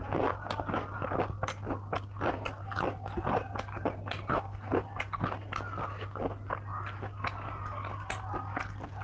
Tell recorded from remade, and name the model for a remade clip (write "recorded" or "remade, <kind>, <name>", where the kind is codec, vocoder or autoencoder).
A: recorded